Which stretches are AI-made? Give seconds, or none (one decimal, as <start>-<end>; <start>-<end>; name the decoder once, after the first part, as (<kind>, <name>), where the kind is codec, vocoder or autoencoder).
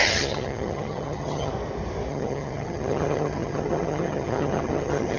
0.0-1.5 (vocoder, HiFi-GAN); 2.1-5.2